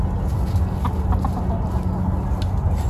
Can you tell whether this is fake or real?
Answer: real